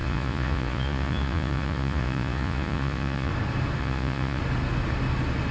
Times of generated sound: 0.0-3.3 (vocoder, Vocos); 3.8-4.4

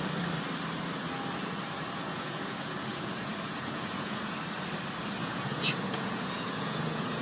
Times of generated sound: 2.1-4.4 (vocoder, Vocos); 5.2-7.2

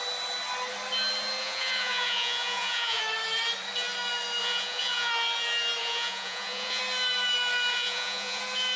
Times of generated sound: 1.4-3.0 (vocoder, Vocos); 4.4-5.1; 5.8-6.8; 7.7-8.4

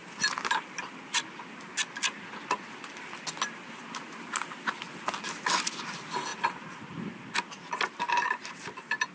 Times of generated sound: none